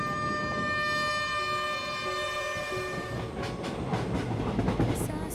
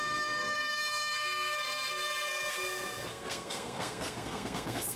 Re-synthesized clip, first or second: second